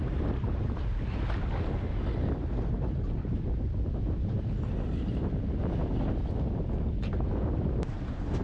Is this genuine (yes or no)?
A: yes